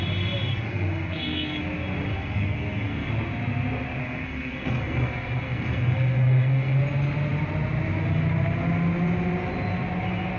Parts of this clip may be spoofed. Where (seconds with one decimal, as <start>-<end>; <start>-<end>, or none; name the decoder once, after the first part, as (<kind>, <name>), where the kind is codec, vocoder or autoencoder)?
0.5-1.6 (codec, SNAC); 2.1-3.1; 4.0-6.8